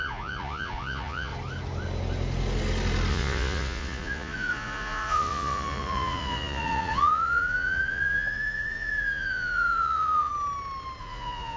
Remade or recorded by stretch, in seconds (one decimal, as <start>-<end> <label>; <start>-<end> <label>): 0.0-1.3 remade; 1.3-3.1 recorded; 3.1-10.3 remade; 10.3-11.0 recorded; 11.0-11.6 remade